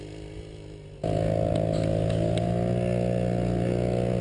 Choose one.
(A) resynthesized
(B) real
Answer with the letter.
B